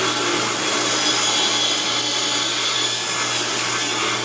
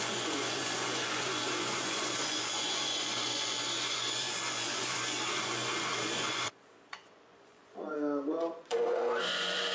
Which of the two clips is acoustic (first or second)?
first